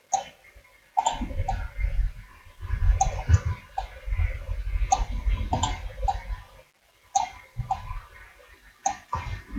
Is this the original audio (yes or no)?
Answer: yes